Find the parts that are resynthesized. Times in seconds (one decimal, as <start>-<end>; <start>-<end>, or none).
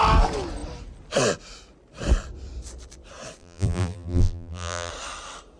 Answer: 3.4-4.9